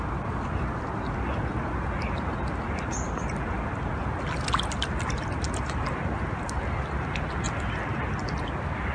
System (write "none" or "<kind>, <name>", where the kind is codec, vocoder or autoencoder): none